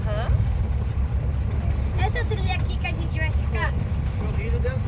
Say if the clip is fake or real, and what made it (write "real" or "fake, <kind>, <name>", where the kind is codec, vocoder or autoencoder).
real